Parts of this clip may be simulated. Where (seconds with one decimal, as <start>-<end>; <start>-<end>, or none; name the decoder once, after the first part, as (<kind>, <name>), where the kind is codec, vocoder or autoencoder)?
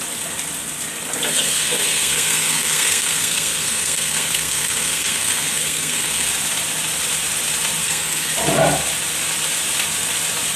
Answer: 1.3-6.3 (codec, SNAC); 7.8-8.3